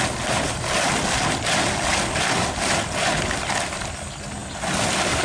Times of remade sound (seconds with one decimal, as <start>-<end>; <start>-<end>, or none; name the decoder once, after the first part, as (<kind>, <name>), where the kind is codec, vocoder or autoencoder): 1.9-2.5 (vocoder, BigVGAN v2)